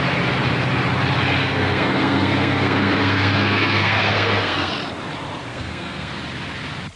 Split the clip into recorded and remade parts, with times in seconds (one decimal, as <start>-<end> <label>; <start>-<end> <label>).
0.0-1.4 recorded; 1.4-4.7 remade; 4.7-5.5 recorded; 5.5-6.1 remade; 6.1-7.0 recorded